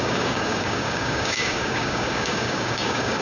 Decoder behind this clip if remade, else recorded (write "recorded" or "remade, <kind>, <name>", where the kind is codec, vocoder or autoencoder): remade, codec, DAC